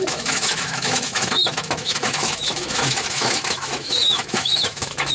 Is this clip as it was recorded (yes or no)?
no